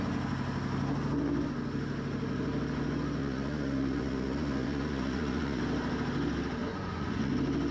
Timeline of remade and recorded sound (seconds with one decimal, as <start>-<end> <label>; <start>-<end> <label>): 0.0-3.2 recorded; 3.2-5.6 remade; 5.6-6.6 recorded; 6.6-7.3 remade; 7.3-7.7 recorded